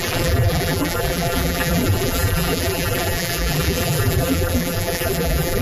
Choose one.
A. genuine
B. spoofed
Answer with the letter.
B